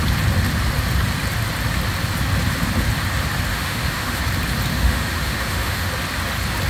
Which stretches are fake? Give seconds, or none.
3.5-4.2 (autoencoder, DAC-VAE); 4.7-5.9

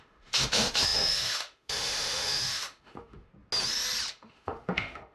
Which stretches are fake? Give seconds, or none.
0.0-3.3 (autoencoder, DAC-VAE); 4.1-5.1